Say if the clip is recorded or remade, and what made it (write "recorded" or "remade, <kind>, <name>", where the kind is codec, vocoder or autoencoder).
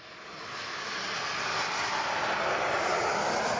recorded